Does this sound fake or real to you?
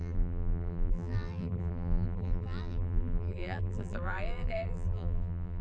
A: fake